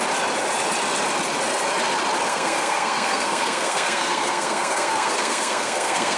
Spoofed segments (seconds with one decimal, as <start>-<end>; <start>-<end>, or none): 2.3-6.2